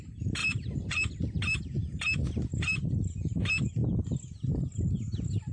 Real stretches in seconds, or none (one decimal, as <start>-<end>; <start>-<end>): 0.0-0.4; 1.1-5.5